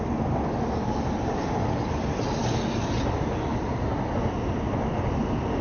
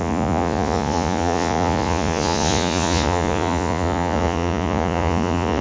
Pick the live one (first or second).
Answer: first